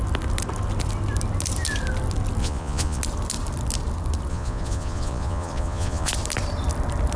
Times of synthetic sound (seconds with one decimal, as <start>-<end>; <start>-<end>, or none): 2.4-3.0; 4.3-6.1